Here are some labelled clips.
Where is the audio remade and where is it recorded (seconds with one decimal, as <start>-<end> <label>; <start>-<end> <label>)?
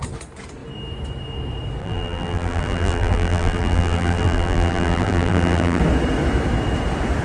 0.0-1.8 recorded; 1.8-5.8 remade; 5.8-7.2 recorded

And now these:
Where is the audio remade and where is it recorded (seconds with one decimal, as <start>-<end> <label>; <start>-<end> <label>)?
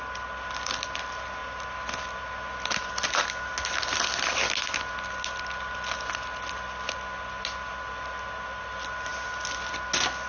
0.0-10.3 recorded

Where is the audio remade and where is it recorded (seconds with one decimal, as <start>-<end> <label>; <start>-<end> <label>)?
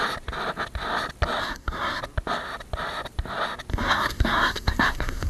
0.0-1.4 recorded; 1.4-2.0 remade; 2.0-3.7 recorded; 3.7-5.3 remade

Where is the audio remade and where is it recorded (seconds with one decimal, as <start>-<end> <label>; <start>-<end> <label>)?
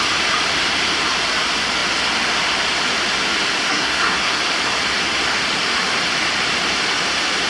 0.0-3.7 recorded; 3.7-4.4 remade; 4.4-7.5 recorded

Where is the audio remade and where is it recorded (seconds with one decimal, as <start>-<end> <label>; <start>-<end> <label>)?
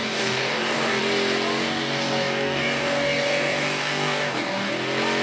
0.0-1.0 remade; 1.0-1.6 recorded; 1.6-4.7 remade; 4.7-5.2 recorded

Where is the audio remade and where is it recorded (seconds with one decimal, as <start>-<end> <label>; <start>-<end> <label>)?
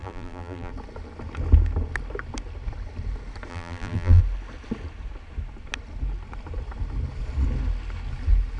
0.0-0.7 remade; 0.7-3.5 recorded; 3.5-4.2 remade; 4.2-8.6 recorded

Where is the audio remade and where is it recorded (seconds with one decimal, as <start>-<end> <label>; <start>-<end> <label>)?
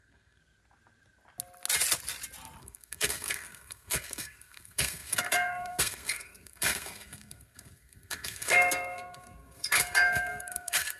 0.0-0.4 remade; 0.4-2.6 recorded; 2.6-11.0 remade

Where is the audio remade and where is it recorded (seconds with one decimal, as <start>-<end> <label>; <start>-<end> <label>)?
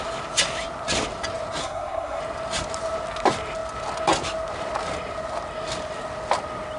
0.0-1.6 recorded; 1.6-2.2 remade; 2.2-6.8 recorded